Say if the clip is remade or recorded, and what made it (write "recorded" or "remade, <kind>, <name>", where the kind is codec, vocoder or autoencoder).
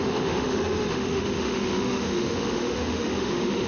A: remade, autoencoder, DAC-VAE